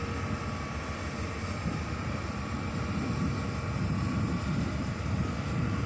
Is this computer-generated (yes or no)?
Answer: no